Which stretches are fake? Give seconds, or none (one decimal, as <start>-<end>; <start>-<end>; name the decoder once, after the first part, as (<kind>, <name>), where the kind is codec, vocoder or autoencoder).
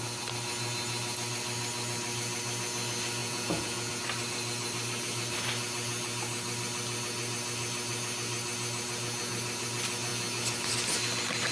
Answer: 3.2-3.9 (vocoder, Vocos)